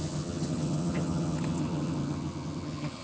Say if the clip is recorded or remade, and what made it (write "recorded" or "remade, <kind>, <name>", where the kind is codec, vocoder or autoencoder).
remade, vocoder, HiFi-GAN